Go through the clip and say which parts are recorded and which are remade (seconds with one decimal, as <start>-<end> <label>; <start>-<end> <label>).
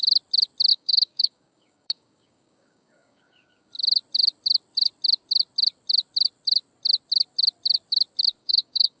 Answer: 0.0-0.7 recorded; 0.7-3.7 remade; 3.7-8.4 recorded; 8.4-9.0 remade